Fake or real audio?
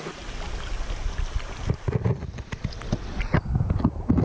real